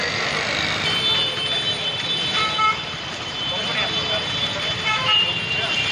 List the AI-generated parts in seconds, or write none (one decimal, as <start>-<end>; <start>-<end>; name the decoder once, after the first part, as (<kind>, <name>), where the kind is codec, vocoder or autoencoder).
0.0-5.9 (vocoder, BigVGAN v2)